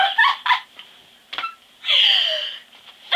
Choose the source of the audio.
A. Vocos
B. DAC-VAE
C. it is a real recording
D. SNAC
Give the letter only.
C